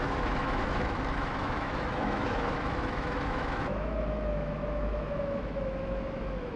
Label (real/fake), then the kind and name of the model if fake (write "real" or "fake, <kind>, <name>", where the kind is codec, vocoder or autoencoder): fake, autoencoder, DAC-VAE